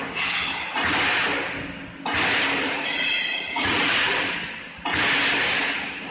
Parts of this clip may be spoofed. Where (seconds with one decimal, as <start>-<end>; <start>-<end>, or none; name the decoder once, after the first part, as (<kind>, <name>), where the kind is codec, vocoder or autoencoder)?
2.6-4.3 (vocoder, Vocos)